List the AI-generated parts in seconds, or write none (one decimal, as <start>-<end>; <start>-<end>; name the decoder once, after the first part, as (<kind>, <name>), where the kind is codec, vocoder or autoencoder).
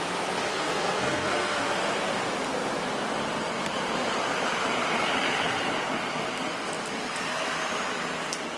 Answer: 0.5-1.6 (codec, SNAC)